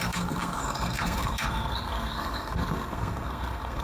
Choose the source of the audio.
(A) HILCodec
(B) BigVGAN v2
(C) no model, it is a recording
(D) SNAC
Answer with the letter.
D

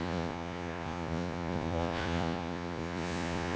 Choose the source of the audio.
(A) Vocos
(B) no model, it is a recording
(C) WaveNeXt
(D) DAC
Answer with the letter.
A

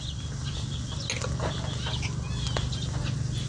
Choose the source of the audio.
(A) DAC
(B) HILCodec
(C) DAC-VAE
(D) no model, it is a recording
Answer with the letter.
D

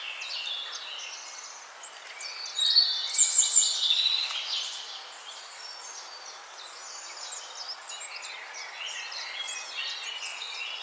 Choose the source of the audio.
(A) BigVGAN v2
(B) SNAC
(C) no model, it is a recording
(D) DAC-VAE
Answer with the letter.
C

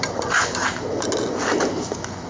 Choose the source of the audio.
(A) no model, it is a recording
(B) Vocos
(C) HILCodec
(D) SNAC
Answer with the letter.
A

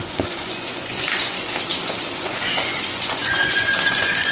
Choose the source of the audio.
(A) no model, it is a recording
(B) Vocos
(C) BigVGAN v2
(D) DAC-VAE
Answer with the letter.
B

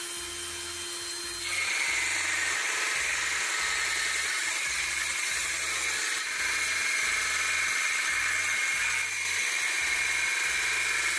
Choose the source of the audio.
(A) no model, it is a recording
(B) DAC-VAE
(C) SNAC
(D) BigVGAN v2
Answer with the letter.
A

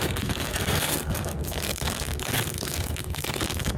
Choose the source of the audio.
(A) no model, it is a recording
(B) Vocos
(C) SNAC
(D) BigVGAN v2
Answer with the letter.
C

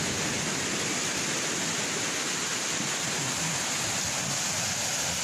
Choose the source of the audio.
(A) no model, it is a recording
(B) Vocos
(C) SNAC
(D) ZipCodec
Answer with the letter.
A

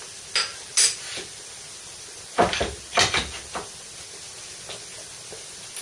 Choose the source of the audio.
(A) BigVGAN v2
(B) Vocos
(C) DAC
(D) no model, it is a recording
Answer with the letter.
D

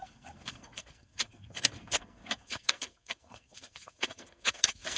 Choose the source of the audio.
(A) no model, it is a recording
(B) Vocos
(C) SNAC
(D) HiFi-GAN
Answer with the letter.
C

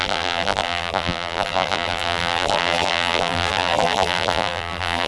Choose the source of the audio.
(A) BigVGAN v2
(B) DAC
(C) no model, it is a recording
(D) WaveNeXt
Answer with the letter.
A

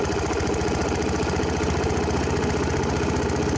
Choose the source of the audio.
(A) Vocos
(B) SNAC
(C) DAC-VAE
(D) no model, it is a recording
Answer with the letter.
D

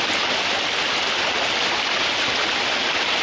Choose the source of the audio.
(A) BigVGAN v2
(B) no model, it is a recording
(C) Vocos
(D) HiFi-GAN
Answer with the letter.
B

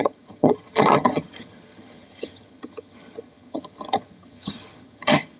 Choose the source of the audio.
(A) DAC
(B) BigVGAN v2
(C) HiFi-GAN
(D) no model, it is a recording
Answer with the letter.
C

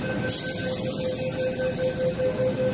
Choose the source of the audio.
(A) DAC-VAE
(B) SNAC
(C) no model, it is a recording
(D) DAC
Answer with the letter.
C